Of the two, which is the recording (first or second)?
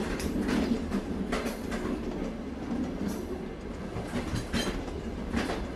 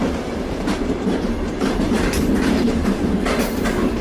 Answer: first